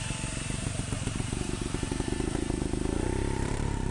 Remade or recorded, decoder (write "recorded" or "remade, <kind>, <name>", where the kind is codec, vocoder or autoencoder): remade, vocoder, BigVGAN v2